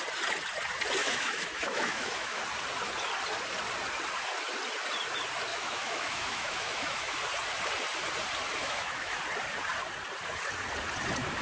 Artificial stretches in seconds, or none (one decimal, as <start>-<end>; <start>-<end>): 1.0-2.4; 5.5-7.2; 8.6-9.2

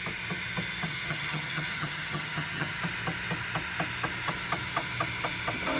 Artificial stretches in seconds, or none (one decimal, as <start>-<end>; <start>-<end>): 0.9-2.8

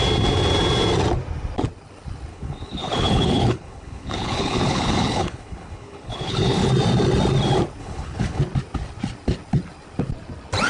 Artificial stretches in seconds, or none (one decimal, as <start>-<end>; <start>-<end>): 2.3-6.7; 7.8-8.4

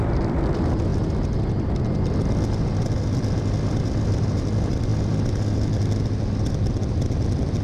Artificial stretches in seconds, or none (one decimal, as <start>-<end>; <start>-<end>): 0.0-0.9; 4.1-4.9; 6.5-7.6

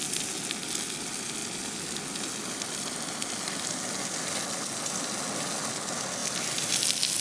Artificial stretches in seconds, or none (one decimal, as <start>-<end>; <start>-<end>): none